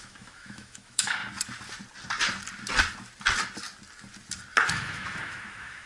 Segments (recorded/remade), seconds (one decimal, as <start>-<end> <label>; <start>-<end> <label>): 0.0-1.2 remade; 1.2-4.7 recorded; 4.7-5.9 remade